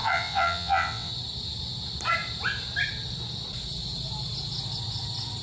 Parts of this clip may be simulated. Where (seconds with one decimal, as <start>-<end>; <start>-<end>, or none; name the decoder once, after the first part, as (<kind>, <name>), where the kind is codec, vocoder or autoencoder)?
0.0-1.1 (vocoder, WaveNeXt)